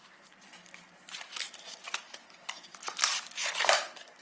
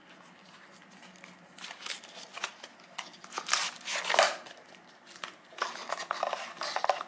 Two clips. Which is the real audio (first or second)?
second